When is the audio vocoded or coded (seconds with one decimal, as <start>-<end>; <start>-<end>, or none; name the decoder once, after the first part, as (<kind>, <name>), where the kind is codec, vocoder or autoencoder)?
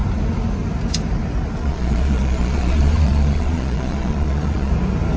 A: 1.6-4.7 (vocoder, Vocos)